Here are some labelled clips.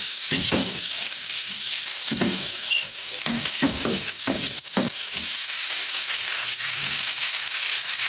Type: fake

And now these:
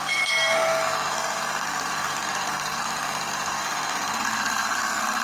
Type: fake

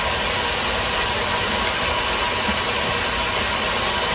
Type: real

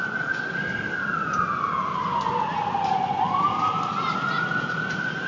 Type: real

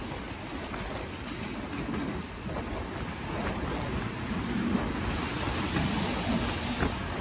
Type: real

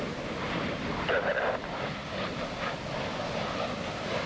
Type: real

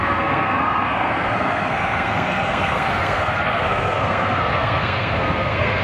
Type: fake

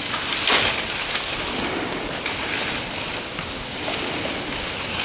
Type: real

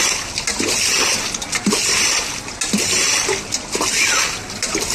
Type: real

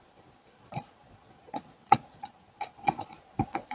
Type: fake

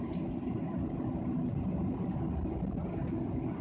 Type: real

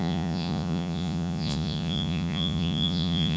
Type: fake